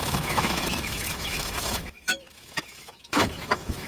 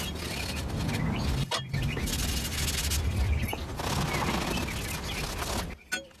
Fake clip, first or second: first